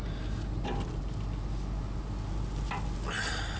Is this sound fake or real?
real